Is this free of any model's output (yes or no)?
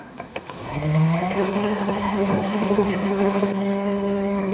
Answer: no